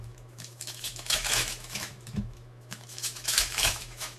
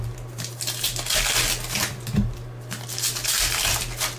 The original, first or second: second